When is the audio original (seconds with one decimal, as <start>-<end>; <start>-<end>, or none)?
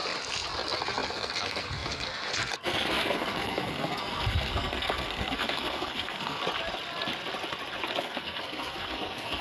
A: 0.0-1.1; 6.4-8.0